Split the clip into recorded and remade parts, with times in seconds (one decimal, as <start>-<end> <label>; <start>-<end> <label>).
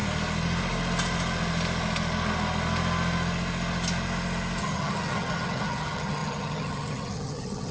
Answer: 0.0-4.6 recorded; 4.6-7.7 remade